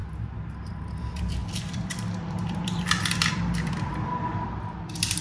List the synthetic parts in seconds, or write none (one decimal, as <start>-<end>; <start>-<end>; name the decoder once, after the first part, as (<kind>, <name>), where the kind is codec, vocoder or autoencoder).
0.7-5.2 (vocoder, BigVGAN v2)